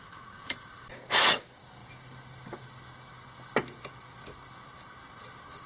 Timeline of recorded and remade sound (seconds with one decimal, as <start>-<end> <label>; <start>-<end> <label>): 0.0-5.7 recorded